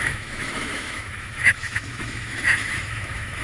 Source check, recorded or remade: remade